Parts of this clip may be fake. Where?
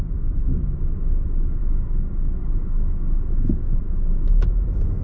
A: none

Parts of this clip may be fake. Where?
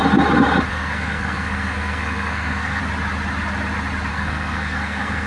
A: 0.7-2.8; 4.1-5.3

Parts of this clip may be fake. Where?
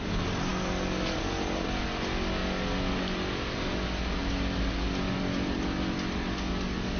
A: none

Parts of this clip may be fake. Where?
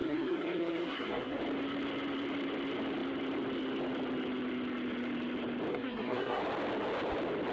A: 0.0-1.4; 5.7-6.4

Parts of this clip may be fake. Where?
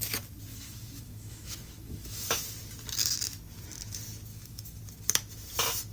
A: 0.5-2.4; 4.3-4.8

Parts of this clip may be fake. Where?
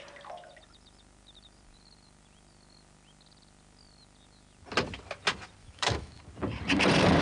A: 5.6-6.2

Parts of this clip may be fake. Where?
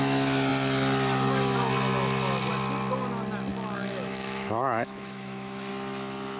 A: 3.5-5.7